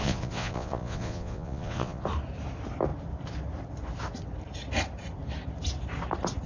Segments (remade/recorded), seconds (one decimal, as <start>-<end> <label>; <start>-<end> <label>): 0.0-2.0 remade; 2.0-6.5 recorded